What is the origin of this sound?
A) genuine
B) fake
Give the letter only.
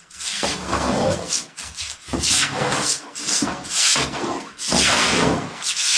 B